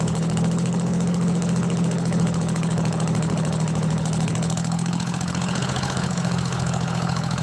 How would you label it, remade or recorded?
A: remade